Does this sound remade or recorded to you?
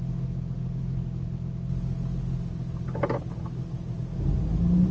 recorded